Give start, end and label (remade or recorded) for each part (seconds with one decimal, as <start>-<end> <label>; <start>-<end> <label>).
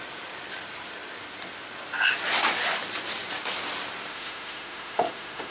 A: 0.0-4.1 recorded; 4.1-5.5 remade